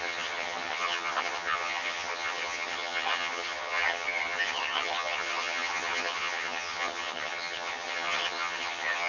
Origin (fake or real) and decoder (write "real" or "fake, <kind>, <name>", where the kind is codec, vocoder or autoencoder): fake, vocoder, HiFi-GAN